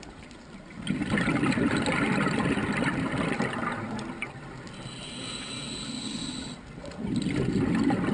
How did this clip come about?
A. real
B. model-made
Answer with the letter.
A